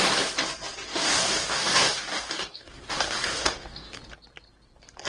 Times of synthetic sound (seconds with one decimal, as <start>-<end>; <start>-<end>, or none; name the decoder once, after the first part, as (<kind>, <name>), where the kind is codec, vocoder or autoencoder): 0.9-4.0 (codec, DAC)